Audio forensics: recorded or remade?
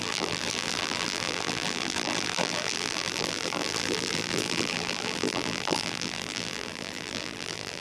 remade